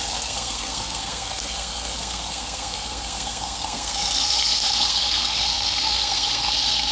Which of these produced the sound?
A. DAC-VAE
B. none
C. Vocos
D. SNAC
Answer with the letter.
D